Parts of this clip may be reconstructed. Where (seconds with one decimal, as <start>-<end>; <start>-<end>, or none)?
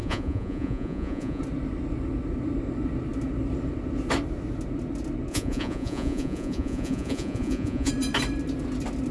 0.0-1.4; 5.3-7.9